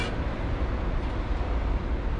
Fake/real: real